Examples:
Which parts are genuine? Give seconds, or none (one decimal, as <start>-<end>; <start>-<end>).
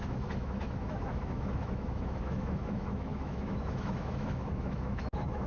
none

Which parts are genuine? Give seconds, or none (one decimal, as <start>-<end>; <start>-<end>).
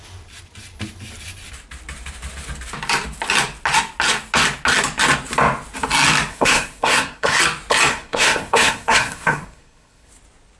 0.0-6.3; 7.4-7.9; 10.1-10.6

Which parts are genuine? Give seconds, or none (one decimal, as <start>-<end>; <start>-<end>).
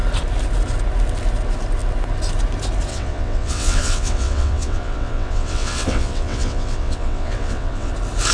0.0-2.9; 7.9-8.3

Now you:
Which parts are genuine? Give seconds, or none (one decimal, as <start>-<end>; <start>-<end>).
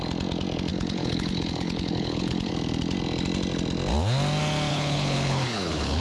0.0-0.7; 2.5-4.7